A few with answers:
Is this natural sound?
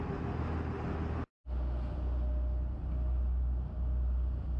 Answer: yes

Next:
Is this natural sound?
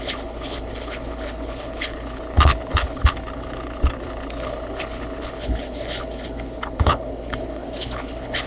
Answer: no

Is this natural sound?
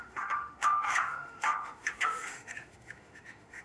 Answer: no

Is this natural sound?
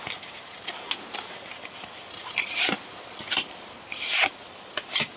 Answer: yes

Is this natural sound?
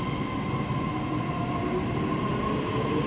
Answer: yes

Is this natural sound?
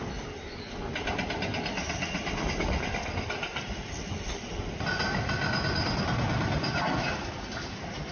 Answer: yes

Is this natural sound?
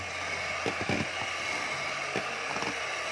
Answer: yes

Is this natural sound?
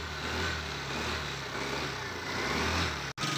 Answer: yes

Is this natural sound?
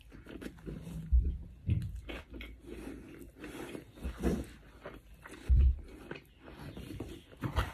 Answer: yes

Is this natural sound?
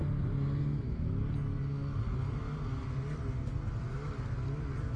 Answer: yes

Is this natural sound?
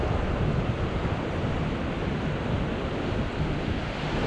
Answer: yes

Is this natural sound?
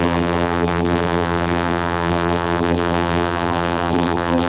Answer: no